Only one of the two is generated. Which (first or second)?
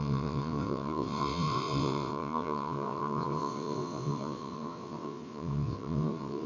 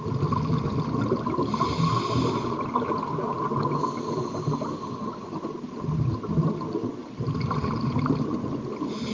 first